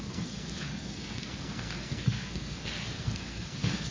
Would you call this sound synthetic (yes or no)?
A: yes